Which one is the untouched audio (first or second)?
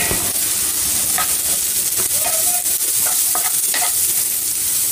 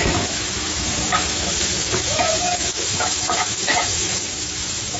first